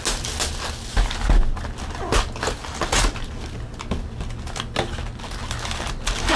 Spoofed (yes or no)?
no